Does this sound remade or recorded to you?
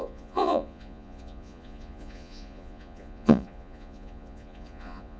remade